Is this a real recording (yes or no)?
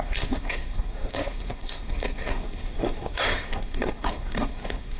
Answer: no